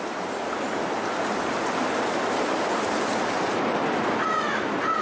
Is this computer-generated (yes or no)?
no